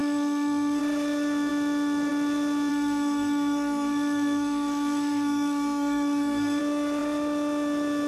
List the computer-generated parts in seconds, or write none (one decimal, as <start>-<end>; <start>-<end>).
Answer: 0.0-0.8; 2.7-6.6